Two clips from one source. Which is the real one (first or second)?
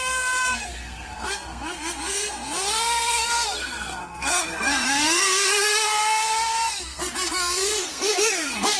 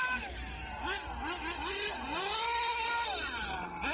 second